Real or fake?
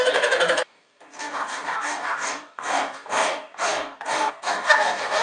fake